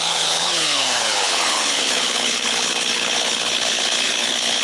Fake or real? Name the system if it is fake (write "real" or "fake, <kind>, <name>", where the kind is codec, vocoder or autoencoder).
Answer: fake, codec, HILCodec